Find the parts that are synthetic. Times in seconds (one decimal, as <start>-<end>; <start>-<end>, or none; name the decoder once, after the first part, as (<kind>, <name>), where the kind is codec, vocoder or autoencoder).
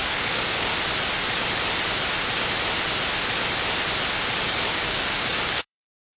0.0-0.7 (codec, DAC); 4.4-6.2